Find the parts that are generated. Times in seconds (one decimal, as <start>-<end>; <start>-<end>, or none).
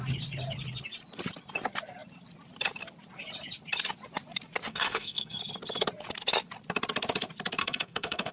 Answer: 4.7-5.4; 7.6-8.3